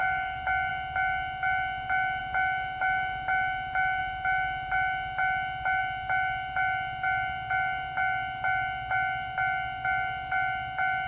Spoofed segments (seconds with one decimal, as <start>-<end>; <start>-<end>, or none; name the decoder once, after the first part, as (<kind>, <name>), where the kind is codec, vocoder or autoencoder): none